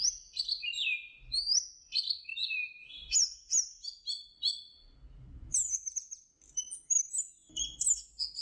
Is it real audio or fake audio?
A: real